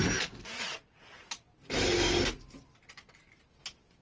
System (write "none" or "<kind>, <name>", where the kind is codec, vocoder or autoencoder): none